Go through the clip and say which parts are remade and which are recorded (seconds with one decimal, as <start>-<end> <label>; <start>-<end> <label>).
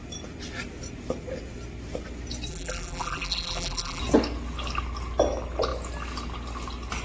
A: 0.0-2.5 recorded; 2.5-4.0 remade; 4.0-7.0 recorded